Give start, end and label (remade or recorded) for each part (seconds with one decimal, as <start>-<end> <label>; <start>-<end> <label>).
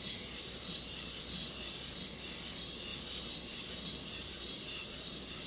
0.0-5.5 recorded